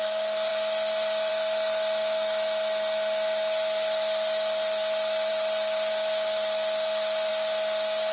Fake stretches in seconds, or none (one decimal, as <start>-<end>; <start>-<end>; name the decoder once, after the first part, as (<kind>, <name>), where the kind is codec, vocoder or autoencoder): none